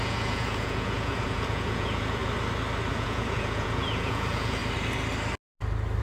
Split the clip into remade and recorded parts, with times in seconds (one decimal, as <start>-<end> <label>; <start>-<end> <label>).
0.0-2.2 remade; 2.2-2.9 recorded; 2.9-4.6 remade; 4.6-6.0 recorded